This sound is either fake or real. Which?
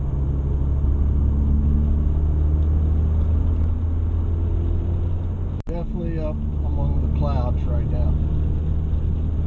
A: real